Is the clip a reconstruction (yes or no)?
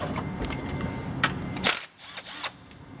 yes